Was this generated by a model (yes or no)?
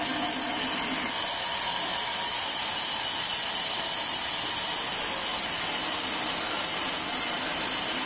no